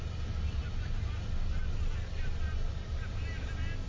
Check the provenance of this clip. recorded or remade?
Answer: recorded